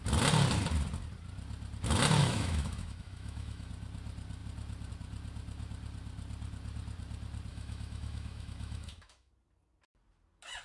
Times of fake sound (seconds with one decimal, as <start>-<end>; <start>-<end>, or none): 2.2-3.7; 7.5-9.3